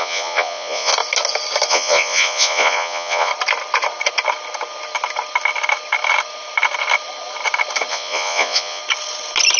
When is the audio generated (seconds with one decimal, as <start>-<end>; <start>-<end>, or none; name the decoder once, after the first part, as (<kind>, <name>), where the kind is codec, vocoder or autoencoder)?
0.0-0.9 (vocoder, Vocos); 1.7-3.3; 7.9-8.8